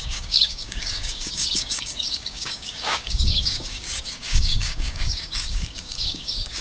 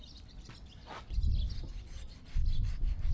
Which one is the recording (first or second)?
second